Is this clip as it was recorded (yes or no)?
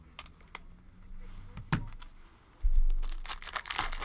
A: yes